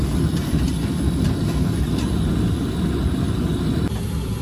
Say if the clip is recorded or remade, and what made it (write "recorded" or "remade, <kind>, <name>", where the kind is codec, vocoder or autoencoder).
recorded